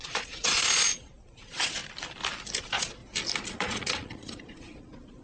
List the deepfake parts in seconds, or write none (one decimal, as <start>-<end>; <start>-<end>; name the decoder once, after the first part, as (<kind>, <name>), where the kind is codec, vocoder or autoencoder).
0.0-1.8 (vocoder, Vocos); 2.6-3.0; 3.5-5.2